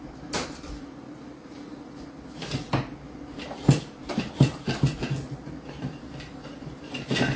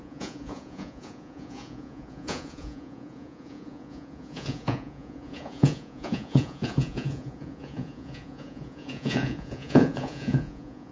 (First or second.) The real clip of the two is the first